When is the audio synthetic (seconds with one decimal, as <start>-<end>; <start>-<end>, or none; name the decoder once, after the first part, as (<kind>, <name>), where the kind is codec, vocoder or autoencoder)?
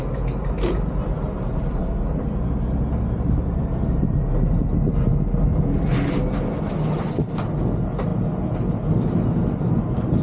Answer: none